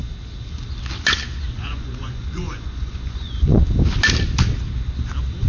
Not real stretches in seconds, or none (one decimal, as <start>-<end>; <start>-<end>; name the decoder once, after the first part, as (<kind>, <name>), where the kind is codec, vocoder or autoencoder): 1.5-3.6 (vocoder, Vocos)